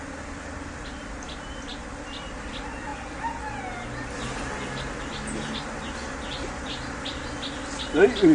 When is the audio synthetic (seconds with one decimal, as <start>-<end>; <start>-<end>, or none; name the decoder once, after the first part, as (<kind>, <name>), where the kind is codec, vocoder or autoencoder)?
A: none